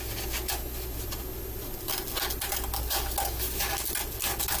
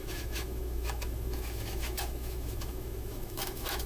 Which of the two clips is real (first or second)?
first